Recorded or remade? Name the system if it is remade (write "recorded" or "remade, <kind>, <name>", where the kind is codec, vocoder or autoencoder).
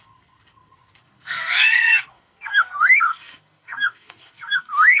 remade, codec, SNAC